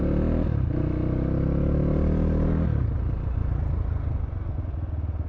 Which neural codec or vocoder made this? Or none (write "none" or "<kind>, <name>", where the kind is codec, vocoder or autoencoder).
none